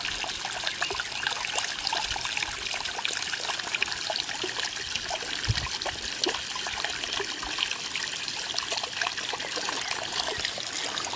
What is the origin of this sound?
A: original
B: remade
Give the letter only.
A